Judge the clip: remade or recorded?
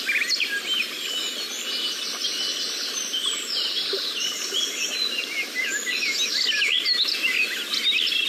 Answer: recorded